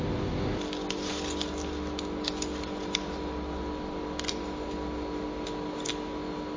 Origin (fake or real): real